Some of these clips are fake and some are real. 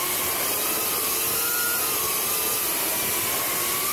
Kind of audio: real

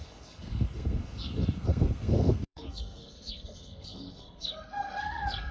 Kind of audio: fake